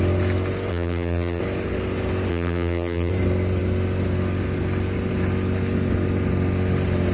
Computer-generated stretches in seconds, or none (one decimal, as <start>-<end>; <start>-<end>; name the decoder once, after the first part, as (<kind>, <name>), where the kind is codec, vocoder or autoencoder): 0.7-1.4 (vocoder, BigVGAN v2); 2.3-3.1